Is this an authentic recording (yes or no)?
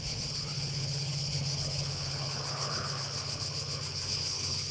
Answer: no